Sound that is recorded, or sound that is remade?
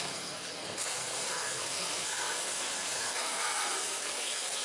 remade